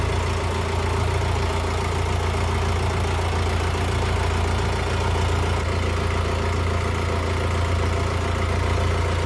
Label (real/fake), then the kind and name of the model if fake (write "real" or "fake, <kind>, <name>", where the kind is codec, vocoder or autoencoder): real